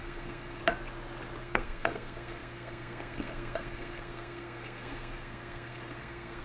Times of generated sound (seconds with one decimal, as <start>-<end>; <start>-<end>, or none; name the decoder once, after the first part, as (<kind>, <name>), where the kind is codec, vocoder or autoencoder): 0.0-0.6 (codec, SNAC); 1.4-6.4